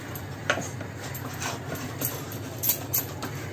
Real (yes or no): yes